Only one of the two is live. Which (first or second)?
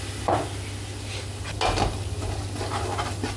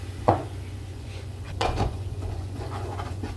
first